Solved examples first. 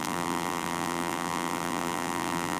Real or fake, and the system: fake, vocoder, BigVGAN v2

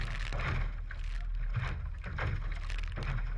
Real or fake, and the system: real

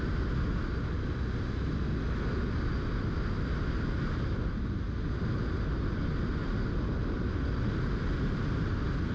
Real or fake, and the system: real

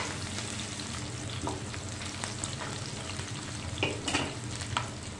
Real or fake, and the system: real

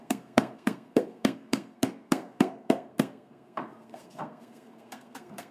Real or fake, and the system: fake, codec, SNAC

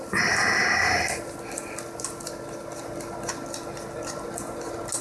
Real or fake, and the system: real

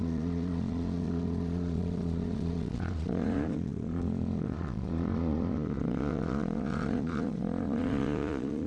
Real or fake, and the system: fake, vocoder, Vocos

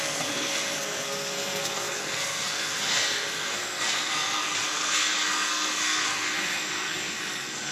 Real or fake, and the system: fake, codec, SNAC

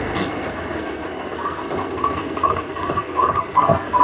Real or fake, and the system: fake, codec, SNAC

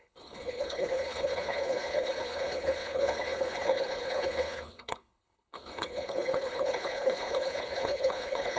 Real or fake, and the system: fake, codec, HILCodec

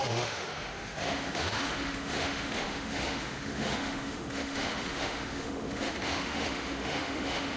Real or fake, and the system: fake, autoencoder, DAC-VAE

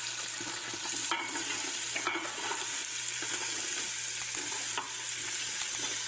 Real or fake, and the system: real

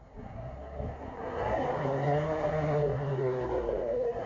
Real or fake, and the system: fake, codec, SNAC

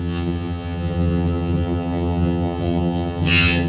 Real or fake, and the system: fake, vocoder, HiFi-GAN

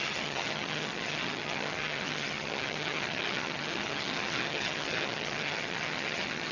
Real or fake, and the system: fake, vocoder, HiFi-GAN